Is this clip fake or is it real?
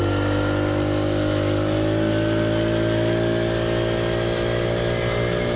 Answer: real